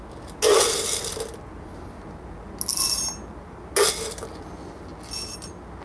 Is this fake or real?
real